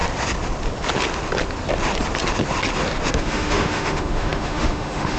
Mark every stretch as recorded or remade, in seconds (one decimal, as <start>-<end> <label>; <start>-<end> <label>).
0.0-3.1 recorded; 3.1-5.2 remade